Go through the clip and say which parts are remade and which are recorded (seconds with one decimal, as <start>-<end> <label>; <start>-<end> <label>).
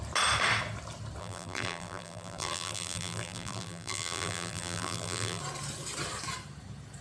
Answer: 0.0-1.2 recorded; 1.2-5.4 remade; 5.4-7.0 recorded